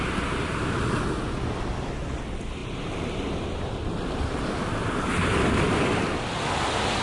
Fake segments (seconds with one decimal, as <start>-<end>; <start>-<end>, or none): none